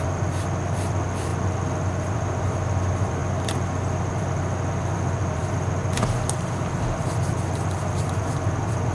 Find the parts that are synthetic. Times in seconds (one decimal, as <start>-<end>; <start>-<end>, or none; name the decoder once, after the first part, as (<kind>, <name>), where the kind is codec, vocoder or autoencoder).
0.0-1.3 (vocoder, BigVGAN v2); 1.8-8.9